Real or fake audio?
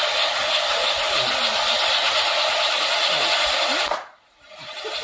real